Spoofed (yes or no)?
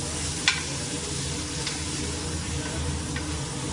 no